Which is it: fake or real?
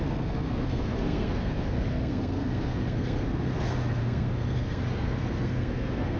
fake